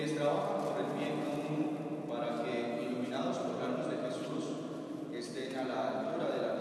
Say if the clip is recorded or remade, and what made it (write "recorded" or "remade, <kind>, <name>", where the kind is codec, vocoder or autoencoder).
recorded